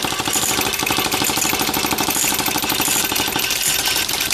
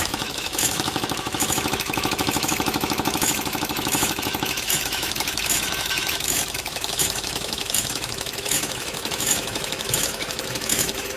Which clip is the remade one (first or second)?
second